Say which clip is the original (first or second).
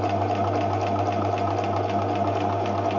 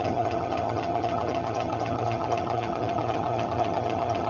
first